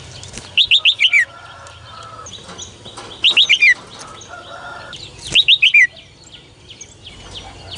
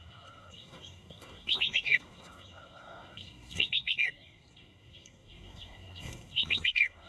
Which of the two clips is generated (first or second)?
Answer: second